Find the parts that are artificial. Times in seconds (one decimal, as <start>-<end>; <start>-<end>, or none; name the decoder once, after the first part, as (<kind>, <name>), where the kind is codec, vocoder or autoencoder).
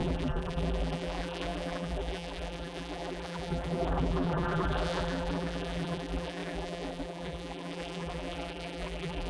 0.0-9.3 (vocoder, BigVGAN v2)